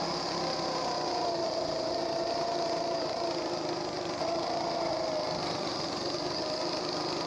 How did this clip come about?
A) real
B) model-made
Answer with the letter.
A